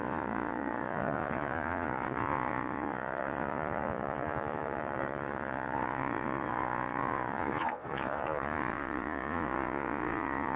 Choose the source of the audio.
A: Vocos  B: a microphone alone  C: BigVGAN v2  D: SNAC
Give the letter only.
A